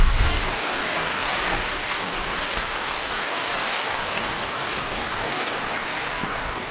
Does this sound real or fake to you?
fake